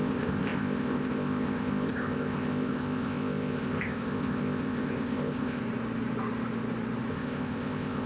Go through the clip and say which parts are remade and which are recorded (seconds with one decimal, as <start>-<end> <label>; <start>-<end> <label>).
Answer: 0.0-5.6 remade; 5.6-7.1 recorded; 7.1-8.1 remade

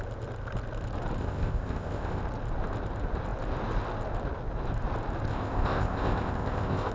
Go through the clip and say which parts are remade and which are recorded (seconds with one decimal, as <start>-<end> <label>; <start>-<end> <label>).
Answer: 0.0-1.2 recorded; 1.2-2.2 remade; 2.2-5.3 recorded; 5.3-6.9 remade

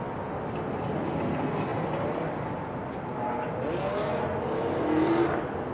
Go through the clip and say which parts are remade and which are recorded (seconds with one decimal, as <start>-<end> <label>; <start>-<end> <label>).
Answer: 0.0-5.7 recorded